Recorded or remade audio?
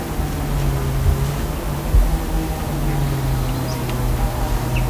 recorded